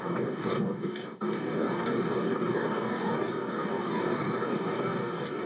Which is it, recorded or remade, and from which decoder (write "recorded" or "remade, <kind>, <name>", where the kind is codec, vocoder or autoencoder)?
remade, codec, DAC